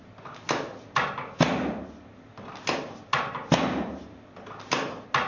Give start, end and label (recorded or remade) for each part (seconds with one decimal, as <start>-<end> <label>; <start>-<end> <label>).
0.0-5.3 recorded